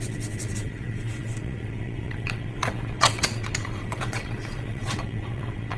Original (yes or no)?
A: no